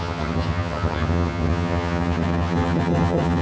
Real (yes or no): no